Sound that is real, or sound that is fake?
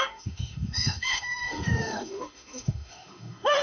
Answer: fake